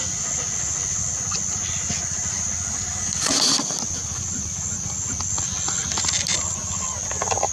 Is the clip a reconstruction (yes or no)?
no